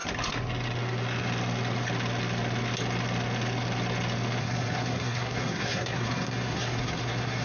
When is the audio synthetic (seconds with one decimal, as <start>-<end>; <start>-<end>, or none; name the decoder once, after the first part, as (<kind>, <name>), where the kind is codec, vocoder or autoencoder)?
4.4-7.4 (codec, SNAC)